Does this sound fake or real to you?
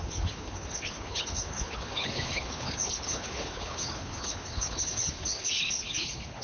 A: fake